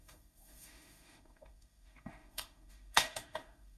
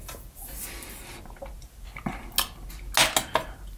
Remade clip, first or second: first